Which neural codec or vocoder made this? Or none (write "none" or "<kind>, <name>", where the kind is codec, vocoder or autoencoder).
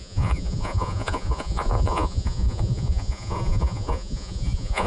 vocoder, Vocos